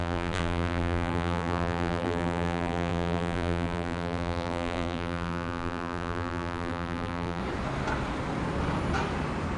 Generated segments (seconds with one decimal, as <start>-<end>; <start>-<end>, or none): 0.0-7.4